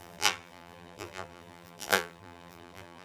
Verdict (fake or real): fake